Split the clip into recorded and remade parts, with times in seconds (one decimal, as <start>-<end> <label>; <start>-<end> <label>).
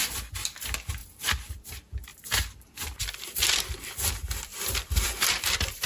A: 0.0-1.0 recorded; 1.0-1.5 remade; 1.5-2.1 recorded; 2.1-3.9 remade; 3.9-4.5 recorded; 4.5-5.9 remade